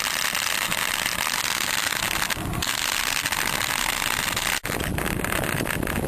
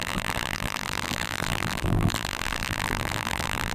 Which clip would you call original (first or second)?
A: first